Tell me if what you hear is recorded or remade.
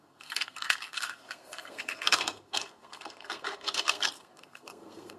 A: remade